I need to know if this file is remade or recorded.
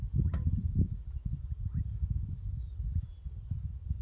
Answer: recorded